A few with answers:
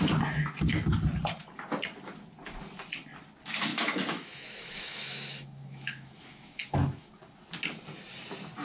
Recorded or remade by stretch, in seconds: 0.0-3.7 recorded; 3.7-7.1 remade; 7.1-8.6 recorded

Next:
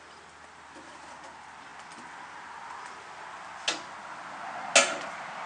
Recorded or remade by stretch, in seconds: 0.0-5.5 recorded

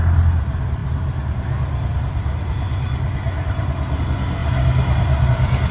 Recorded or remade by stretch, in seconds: 0.0-5.7 recorded

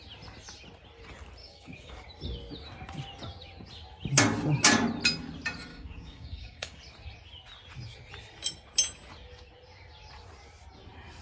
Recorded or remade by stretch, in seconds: 0.0-1.4 recorded; 1.4-1.9 remade; 1.9-5.7 recorded; 5.7-6.8 remade; 6.8-11.2 recorded

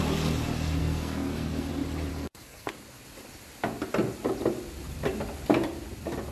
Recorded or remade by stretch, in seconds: 0.0-0.8 recorded; 0.8-1.7 remade; 1.7-2.1 recorded; 2.1-2.7 remade; 2.7-6.3 recorded